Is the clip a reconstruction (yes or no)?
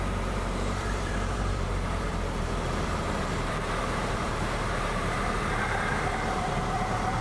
yes